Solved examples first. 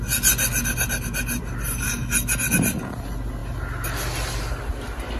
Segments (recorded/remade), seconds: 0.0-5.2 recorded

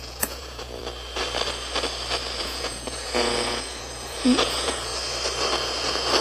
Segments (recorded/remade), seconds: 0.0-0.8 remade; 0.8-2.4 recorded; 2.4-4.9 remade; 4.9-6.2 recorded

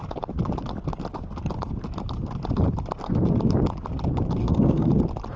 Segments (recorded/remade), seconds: 0.0-4.4 recorded; 4.4-4.9 remade; 4.9-5.4 recorded

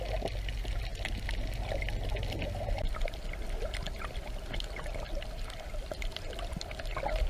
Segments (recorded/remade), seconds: 0.0-7.3 recorded

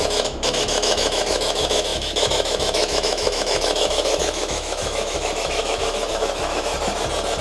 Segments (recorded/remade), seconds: 0.0-6.7 remade; 6.7-7.4 recorded